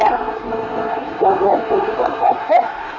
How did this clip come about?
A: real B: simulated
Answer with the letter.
B